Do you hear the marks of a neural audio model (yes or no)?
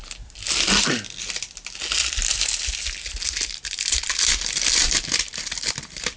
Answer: no